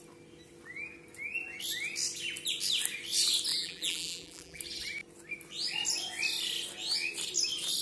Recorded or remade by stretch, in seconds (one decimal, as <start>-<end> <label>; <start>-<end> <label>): 0.0-3.5 recorded; 3.5-4.6 remade; 4.6-7.8 recorded

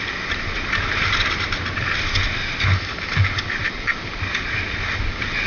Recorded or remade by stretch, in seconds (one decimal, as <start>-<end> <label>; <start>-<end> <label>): 0.0-5.5 recorded

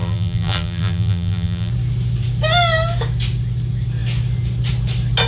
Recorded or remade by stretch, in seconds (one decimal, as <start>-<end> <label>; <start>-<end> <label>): 0.0-1.7 remade; 1.7-5.3 recorded

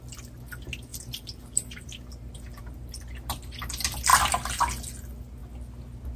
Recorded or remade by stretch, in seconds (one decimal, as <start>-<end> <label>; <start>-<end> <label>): 0.0-0.9 recorded; 0.9-3.6 remade; 3.6-4.1 recorded; 4.1-4.6 remade; 4.6-6.2 recorded